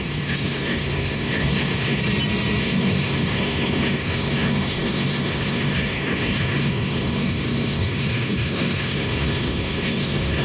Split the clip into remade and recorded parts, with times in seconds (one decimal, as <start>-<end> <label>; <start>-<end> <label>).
0.0-2.0 remade; 2.0-2.6 recorded; 2.6-10.4 remade